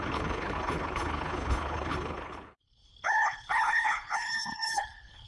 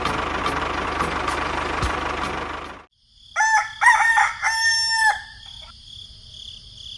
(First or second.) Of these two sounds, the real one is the second